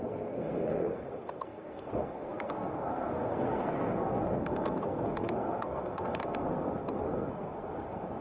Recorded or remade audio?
remade